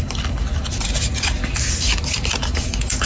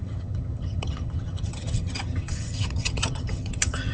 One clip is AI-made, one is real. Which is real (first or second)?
first